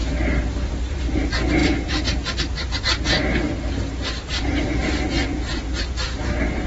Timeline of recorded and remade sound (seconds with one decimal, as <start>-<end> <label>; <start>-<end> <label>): 0.0-1.0 remade; 1.0-1.6 recorded; 1.6-2.8 remade; 2.8-6.7 recorded